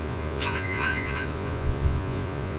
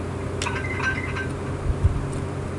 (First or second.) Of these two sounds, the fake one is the first